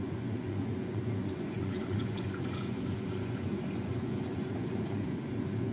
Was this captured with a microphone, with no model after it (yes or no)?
no